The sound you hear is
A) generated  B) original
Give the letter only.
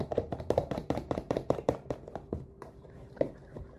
A